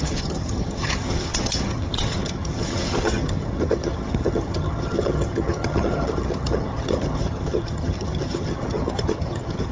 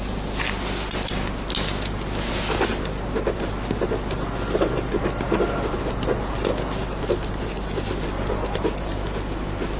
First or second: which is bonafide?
second